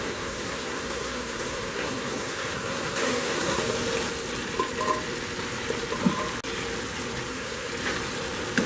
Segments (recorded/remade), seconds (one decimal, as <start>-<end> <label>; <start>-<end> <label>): 0.0-3.6 remade; 3.6-7.3 recorded; 7.3-7.7 remade; 7.7-8.7 recorded